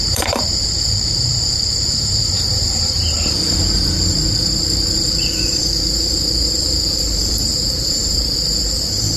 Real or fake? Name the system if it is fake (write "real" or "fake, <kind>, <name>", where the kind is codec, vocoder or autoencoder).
fake, vocoder, BigVGAN v2